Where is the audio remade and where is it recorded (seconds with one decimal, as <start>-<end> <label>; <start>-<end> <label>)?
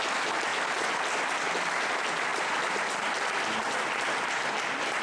0.0-5.0 recorded